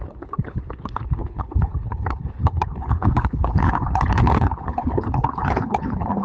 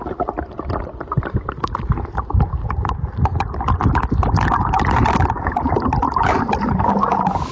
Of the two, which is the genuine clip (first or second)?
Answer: second